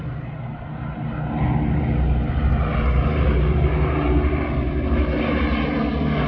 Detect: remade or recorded recorded